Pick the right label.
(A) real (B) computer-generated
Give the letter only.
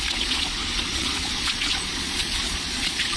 B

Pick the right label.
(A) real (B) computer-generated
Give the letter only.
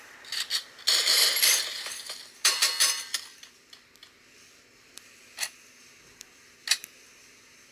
A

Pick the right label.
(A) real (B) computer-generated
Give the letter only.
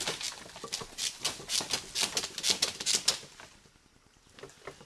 A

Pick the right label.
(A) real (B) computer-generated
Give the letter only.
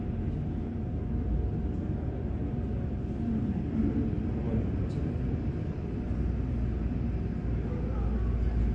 A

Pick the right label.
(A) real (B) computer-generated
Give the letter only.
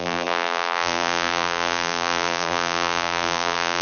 B